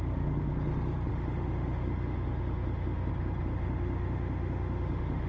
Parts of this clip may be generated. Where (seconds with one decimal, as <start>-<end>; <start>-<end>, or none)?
0.0-0.5; 1.1-3.1; 3.5-5.3